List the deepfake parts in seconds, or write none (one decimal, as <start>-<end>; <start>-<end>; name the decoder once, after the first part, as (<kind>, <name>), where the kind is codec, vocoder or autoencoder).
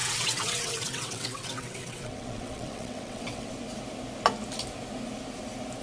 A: 0.0-3.5 (vocoder, WaveNeXt)